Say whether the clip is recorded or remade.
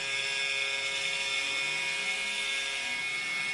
recorded